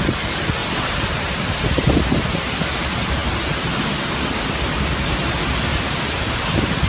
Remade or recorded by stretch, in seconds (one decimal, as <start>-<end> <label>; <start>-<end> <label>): 0.0-0.6 recorded; 0.6-1.9 remade; 1.9-5.7 recorded; 5.7-6.3 remade; 6.3-6.9 recorded

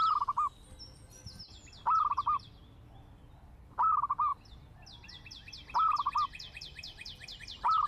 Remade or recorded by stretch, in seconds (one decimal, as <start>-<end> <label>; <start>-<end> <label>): 0.0-7.9 recorded

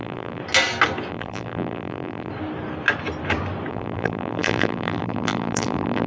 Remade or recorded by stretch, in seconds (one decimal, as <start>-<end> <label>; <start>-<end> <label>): 0.0-0.4 remade; 0.4-1.1 recorded; 1.1-2.3 remade; 2.3-3.7 recorded; 3.7-6.1 remade

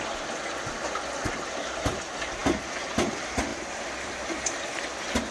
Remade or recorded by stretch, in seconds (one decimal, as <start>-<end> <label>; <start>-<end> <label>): 0.0-3.5 recorded; 3.5-4.8 remade; 4.8-5.3 recorded